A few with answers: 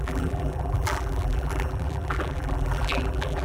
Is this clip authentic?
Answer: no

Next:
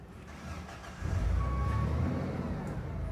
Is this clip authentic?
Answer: yes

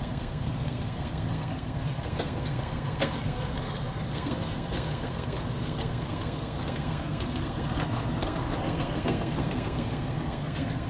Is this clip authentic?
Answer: no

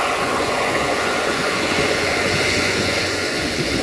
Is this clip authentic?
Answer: no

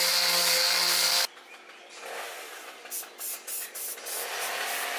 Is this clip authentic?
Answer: yes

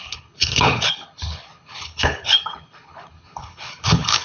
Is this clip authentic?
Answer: no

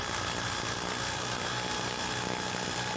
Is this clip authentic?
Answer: yes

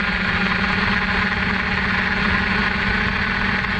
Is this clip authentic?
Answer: yes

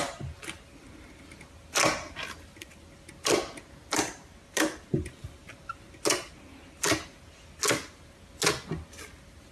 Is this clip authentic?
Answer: yes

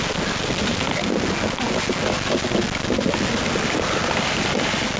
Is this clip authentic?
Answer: yes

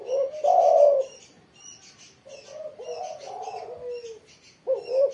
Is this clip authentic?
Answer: yes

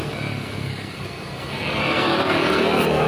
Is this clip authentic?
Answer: no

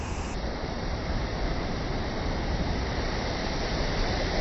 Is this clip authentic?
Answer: no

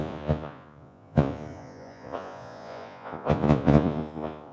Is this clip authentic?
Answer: no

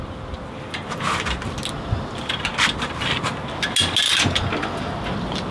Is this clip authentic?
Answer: yes